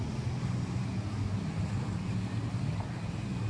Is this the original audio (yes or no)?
yes